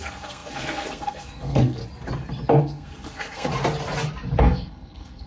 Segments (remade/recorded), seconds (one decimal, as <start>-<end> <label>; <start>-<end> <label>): 0.0-1.8 remade; 1.8-2.6 recorded; 2.6-3.5 remade; 3.5-4.4 recorded; 4.4-5.3 remade